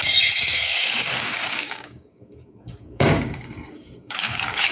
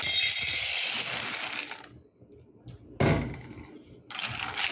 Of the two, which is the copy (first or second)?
first